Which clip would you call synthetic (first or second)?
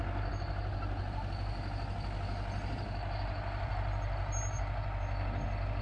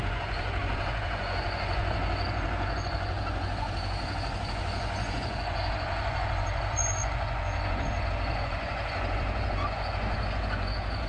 second